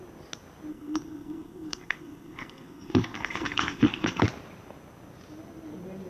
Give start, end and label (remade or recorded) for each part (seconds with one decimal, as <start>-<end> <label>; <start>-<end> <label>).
0.0-0.7 recorded; 0.7-4.2 remade; 4.2-6.1 recorded

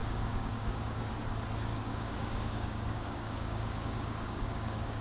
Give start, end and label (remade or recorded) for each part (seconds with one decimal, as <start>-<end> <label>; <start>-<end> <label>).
0.0-1.1 remade; 1.1-1.7 recorded; 1.7-5.0 remade

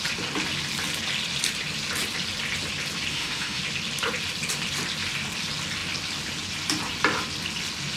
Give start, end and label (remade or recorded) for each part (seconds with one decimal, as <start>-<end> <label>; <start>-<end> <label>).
0.0-3.1 recorded; 3.1-3.6 remade; 3.6-8.0 recorded

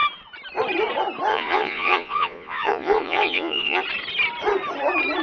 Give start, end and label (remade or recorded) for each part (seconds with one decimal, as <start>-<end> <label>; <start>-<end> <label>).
0.0-1.3 recorded; 1.3-3.8 remade; 3.8-5.2 recorded

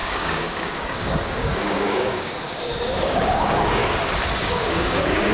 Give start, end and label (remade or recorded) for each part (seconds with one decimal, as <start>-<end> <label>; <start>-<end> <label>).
0.0-3.8 remade; 3.8-4.4 recorded; 4.4-5.3 remade

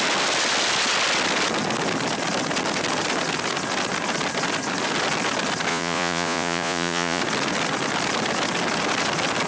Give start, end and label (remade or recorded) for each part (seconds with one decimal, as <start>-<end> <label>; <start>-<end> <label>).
0.0-5.7 recorded; 5.7-7.2 remade; 7.2-9.5 recorded

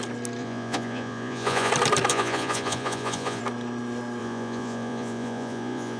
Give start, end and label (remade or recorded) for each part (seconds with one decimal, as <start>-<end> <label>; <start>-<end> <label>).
0.0-0.4 recorded; 0.4-1.7 remade; 1.7-2.1 recorded; 2.1-3.4 remade; 3.4-4.2 recorded; 4.2-6.0 remade